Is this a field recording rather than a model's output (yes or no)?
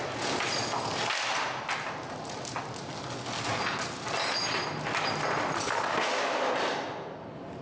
yes